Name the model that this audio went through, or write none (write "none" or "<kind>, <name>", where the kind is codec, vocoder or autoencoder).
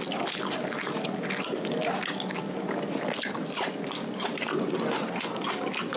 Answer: none